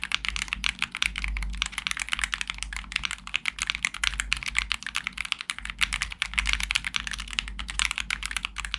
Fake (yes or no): no